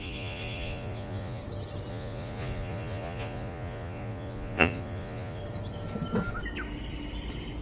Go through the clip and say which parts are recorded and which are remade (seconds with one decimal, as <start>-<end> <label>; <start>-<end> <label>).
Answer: 0.0-1.4 remade; 1.4-1.9 recorded; 1.9-5.4 remade; 5.4-7.6 recorded